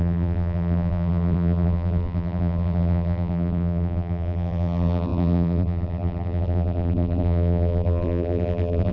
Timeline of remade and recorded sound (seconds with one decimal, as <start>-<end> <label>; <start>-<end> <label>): 0.0-8.9 remade